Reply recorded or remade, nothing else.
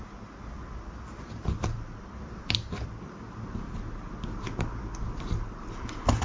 recorded